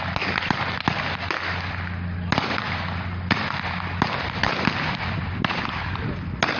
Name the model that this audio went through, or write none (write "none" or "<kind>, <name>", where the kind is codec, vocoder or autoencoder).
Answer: none